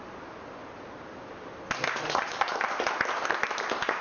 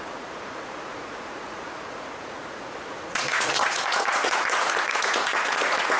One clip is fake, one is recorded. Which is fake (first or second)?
second